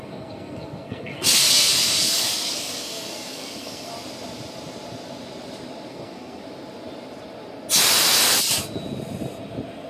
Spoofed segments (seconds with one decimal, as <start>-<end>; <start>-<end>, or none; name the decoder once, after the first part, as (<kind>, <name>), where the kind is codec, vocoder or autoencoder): 0.0-3.9 (codec, SNAC); 5.9-6.4